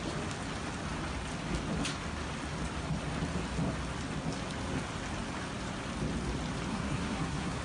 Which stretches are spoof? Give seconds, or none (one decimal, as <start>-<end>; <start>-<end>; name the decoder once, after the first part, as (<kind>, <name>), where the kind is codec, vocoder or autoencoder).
6.7-7.6 (codec, SNAC)